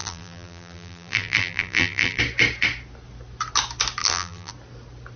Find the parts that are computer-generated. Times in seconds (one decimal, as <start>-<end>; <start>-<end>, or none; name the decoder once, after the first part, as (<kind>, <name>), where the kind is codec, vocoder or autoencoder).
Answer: 0.0-2.2 (vocoder, BigVGAN v2); 4.0-4.5